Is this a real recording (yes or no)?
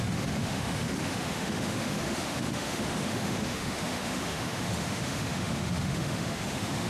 no